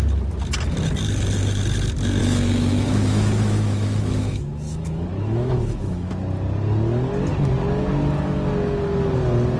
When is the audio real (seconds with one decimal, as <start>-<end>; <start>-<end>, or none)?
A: 0.0-2.2; 6.1-9.6